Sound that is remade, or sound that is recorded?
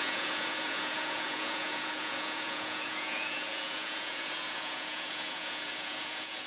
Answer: remade